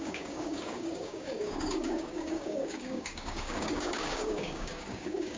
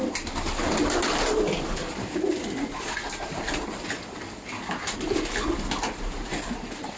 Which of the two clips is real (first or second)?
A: second